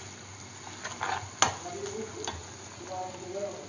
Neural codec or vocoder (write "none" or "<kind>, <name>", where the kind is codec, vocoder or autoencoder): none